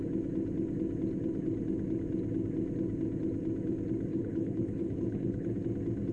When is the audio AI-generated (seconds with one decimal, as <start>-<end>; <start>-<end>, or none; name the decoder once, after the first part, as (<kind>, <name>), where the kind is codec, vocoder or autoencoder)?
4.1-5.6 (codec, HILCodec)